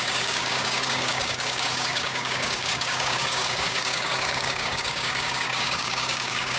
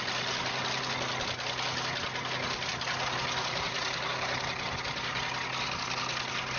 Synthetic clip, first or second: first